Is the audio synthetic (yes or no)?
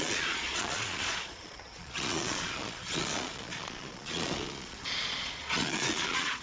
yes